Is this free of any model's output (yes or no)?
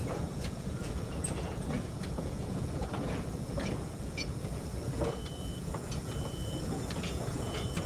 no